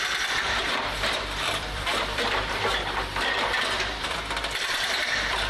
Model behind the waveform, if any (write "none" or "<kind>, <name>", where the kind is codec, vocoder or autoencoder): vocoder, BigVGAN v2